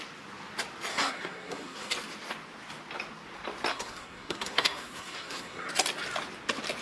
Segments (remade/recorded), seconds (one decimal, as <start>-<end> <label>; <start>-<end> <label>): 0.0-0.9 recorded; 0.9-1.9 remade; 1.9-3.7 recorded; 3.7-5.7 remade; 5.7-6.8 recorded